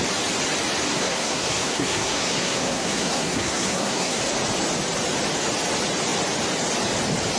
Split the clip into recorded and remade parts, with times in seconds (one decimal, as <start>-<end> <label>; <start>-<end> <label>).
0.0-0.9 recorded; 0.9-4.2 remade; 4.2-7.4 recorded